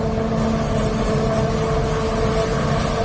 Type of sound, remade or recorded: recorded